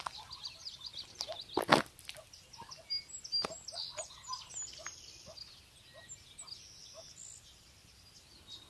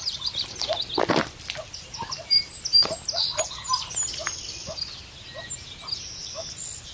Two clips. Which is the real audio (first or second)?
first